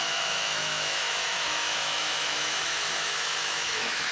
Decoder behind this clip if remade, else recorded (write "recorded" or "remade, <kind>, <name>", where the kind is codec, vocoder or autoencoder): remade, autoencoder, DAC-VAE